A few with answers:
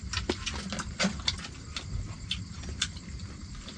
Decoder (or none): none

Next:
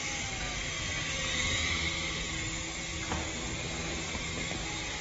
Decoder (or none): none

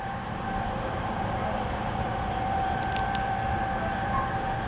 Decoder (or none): vocoder, BigVGAN v2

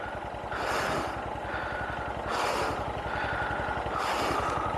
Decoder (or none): none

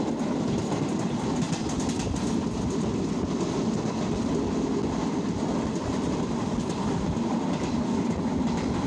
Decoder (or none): none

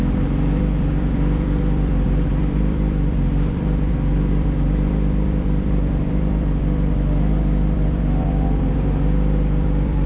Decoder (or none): vocoder, BigVGAN v2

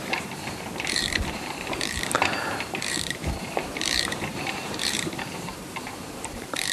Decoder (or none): vocoder, BigVGAN v2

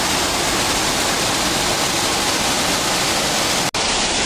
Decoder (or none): none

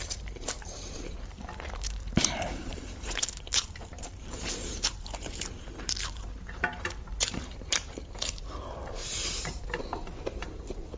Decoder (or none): vocoder, BigVGAN v2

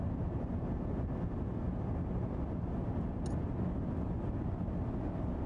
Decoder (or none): none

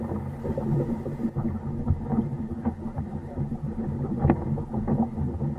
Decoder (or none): vocoder, BigVGAN v2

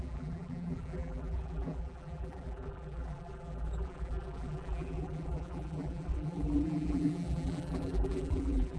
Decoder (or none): vocoder, BigVGAN v2